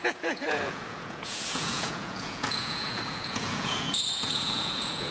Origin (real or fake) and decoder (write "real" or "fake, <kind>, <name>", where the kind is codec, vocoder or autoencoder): fake, vocoder, Vocos